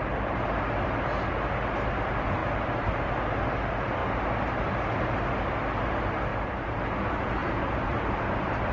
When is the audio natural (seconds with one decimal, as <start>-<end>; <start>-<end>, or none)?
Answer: 0.0-2.4; 3.1-6.3; 6.8-7.4